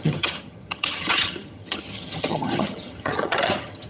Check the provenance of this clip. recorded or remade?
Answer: remade